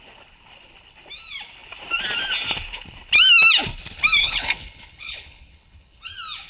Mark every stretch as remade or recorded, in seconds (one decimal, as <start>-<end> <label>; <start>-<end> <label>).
0.0-4.2 recorded; 4.2-6.1 remade; 6.1-6.5 recorded